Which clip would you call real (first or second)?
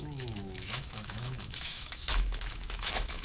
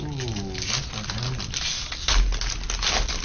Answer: second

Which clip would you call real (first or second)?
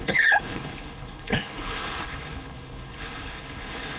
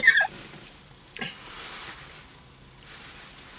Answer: second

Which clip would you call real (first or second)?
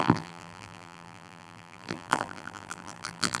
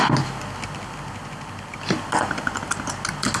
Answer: second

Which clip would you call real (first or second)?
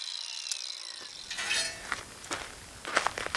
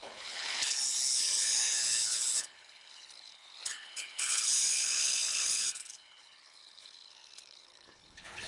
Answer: first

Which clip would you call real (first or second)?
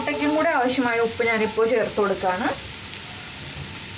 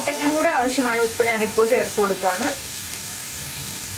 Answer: first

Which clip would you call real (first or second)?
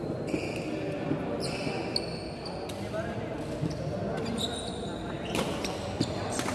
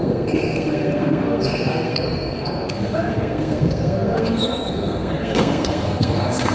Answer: first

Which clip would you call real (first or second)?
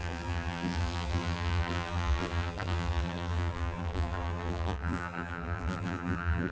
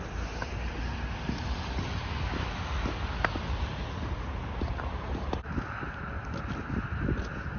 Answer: second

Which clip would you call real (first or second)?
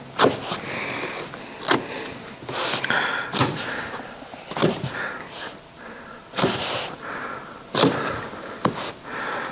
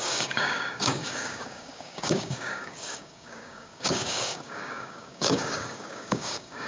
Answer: first